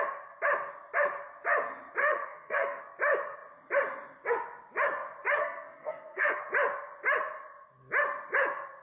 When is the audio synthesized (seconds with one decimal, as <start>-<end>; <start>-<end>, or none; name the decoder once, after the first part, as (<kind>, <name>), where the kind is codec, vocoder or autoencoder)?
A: 2.0-2.8 (codec, SNAC); 5.4-6.4